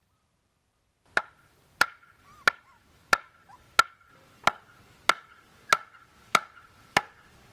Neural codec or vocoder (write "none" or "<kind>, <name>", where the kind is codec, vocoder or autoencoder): none